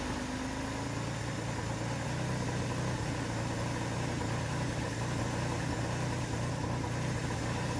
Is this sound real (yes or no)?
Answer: yes